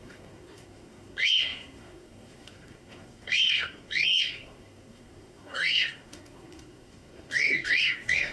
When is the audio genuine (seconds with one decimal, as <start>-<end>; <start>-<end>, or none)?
none